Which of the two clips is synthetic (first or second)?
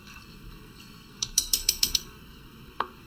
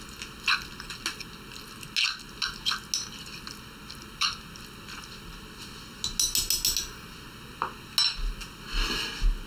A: first